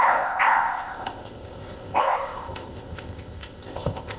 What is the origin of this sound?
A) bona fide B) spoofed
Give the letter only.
B